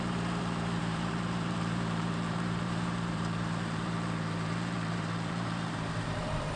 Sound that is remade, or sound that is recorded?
remade